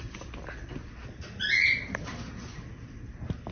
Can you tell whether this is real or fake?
real